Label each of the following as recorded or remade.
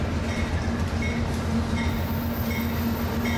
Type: recorded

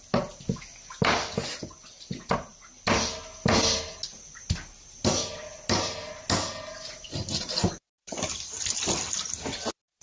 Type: recorded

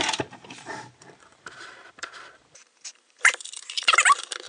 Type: remade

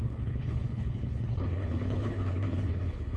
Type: remade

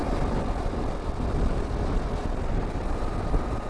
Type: recorded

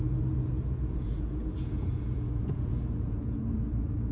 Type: remade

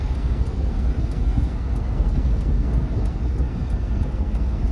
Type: remade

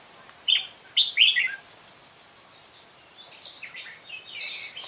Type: remade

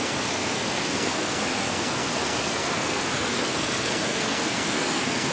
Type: remade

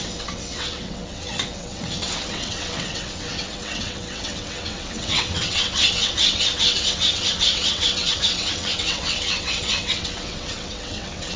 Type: remade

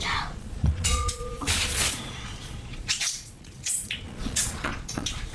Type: remade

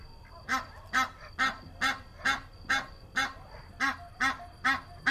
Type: recorded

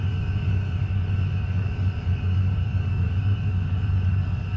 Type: remade